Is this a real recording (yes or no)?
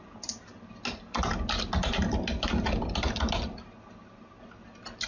yes